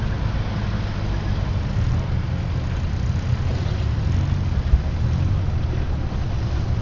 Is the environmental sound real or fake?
real